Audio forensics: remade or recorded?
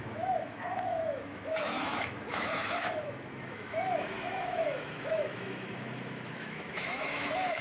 remade